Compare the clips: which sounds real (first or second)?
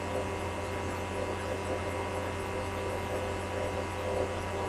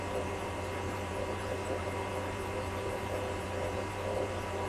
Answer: first